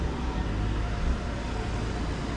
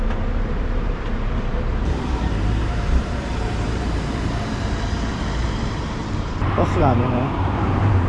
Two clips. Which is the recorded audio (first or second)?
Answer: first